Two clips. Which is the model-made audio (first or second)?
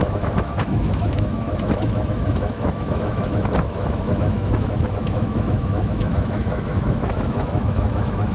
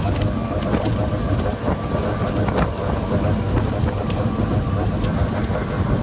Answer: first